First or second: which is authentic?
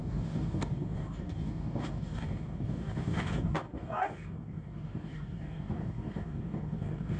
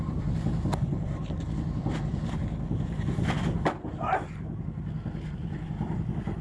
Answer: second